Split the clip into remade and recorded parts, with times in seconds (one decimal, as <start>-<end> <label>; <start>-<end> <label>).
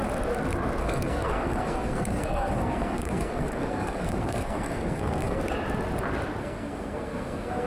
0.0-0.8 recorded; 0.8-5.4 remade; 5.4-6.4 recorded; 6.4-7.7 remade